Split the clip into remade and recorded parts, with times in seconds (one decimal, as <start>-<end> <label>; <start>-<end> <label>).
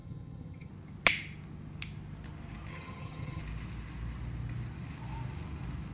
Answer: 0.0-0.7 remade; 0.7-2.7 recorded; 2.7-3.4 remade; 3.4-5.9 recorded